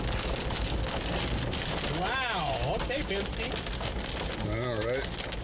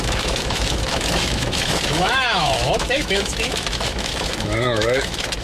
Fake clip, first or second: second